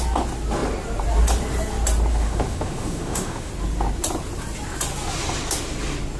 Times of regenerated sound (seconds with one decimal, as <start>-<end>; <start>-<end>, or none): 2.1-3.5